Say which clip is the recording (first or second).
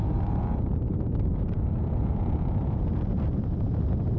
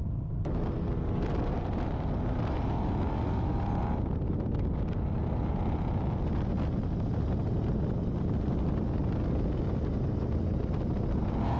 second